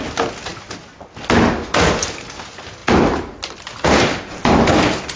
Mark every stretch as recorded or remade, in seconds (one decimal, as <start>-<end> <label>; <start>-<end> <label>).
0.0-5.2 recorded